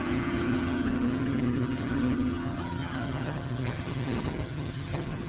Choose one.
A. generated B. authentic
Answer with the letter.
A